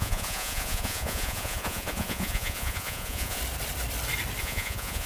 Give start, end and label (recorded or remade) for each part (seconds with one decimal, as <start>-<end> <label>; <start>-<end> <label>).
0.0-3.4 remade; 3.4-4.4 recorded; 4.4-5.1 remade